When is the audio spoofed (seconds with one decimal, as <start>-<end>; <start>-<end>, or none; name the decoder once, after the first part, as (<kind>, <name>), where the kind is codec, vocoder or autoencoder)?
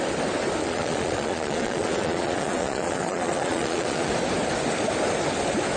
0.6-4.1 (vocoder, Vocos)